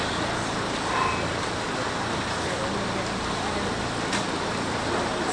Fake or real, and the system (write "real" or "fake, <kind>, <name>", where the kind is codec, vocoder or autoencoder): real